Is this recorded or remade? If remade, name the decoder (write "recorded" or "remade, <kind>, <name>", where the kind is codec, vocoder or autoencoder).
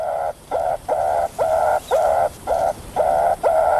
remade, vocoder, BigVGAN v2